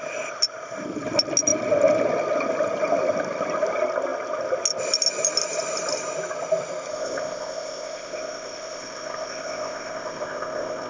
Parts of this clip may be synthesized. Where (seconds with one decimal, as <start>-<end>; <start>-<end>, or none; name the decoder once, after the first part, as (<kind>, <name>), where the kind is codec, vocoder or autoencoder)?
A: 6.9-10.9 (codec, ZipCodec)